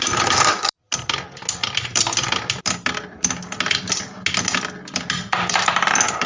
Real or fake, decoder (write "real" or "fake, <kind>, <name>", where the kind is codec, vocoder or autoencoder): fake, vocoder, BigVGAN v2